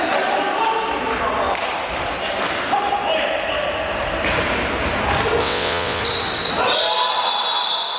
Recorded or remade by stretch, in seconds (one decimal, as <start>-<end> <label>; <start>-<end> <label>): 0.0-5.4 recorded; 5.4-6.0 remade; 6.0-8.0 recorded